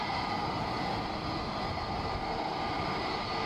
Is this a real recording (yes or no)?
yes